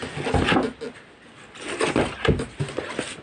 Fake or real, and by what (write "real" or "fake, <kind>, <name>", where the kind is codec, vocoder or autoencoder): real